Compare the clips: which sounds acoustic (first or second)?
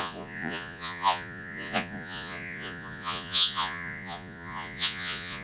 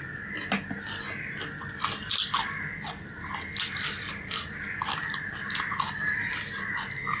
second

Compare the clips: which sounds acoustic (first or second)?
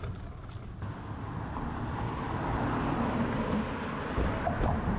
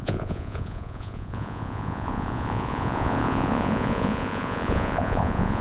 first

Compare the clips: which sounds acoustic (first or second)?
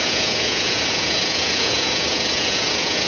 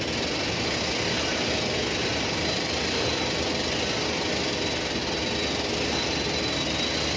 second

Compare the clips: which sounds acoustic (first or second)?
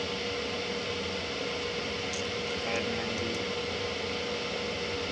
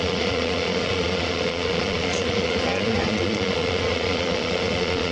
first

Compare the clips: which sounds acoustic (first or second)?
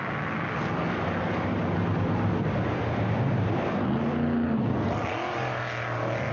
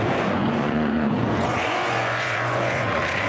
first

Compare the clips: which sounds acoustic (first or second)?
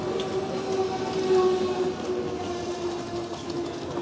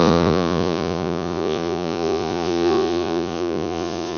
first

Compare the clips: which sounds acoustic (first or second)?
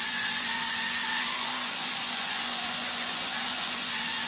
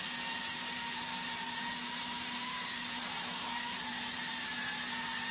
second